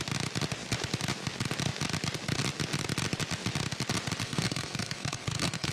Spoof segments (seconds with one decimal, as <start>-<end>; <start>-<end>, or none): 4.2-5.7

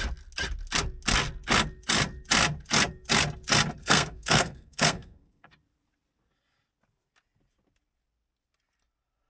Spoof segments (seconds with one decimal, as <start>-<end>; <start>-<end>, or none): 3.8-5.5

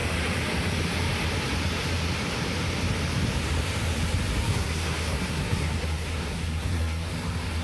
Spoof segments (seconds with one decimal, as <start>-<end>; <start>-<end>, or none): 4.5-7.1

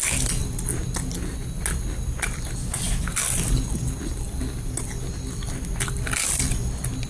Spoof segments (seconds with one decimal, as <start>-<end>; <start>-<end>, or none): none

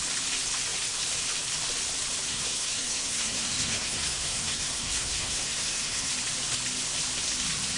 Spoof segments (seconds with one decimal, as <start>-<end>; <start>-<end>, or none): 2.3-6.1

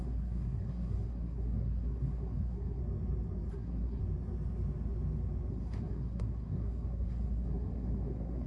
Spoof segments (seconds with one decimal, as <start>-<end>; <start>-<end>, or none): 0.0-2.8; 3.5-4.0; 5.5-8.5

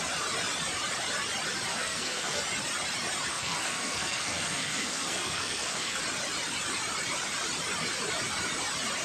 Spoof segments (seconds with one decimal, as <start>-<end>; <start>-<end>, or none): 1.7-2.4; 3.3-6.0